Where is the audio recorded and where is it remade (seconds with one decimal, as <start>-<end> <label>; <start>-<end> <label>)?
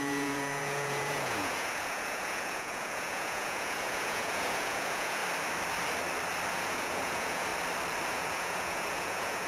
0.0-5.2 remade; 5.2-6.5 recorded; 6.5-7.5 remade; 7.5-8.1 recorded; 8.1-9.5 remade